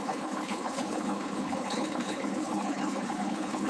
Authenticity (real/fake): fake